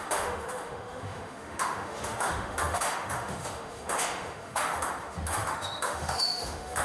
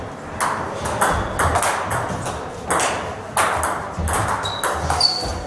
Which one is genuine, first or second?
second